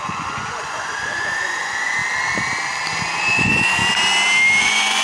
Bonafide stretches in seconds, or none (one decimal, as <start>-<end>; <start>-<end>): 2.0-3.2; 3.8-4.6